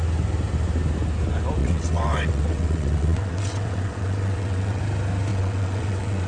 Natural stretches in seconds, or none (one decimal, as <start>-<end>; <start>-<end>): 0.0-1.6; 4.8-5.3